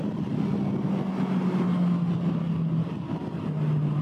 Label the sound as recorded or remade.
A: recorded